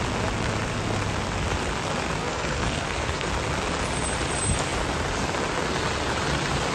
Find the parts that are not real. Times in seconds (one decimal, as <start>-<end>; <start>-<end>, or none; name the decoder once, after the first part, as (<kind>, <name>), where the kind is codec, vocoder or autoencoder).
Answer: 2.2-3.3 (codec, SNAC)